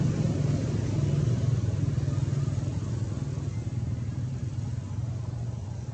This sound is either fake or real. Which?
real